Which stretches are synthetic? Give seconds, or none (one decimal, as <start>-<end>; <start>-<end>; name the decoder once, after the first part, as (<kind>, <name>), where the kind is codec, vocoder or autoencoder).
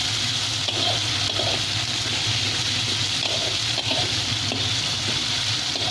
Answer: 3.4-5.9 (vocoder, BigVGAN v2)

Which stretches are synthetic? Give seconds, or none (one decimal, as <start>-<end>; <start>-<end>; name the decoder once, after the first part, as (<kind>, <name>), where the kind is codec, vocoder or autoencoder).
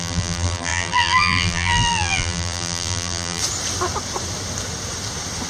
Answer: 0.0-3.4 (vocoder, BigVGAN v2)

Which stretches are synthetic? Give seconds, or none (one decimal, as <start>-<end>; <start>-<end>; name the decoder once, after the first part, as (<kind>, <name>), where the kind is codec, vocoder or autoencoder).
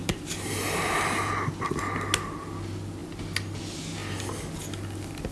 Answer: 0.0-1.3 (vocoder, BigVGAN v2)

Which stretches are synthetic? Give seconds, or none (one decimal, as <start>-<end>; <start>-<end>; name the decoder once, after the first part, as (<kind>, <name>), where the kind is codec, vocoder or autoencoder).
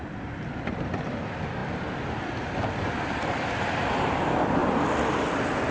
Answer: 0.0-1.6 (vocoder, BigVGAN v2); 2.7-4.6; 5.3-5.7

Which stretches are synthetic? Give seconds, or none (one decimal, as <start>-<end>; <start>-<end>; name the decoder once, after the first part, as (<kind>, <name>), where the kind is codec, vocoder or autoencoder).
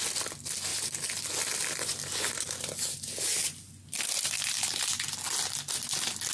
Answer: none